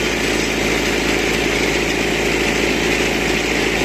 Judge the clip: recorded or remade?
recorded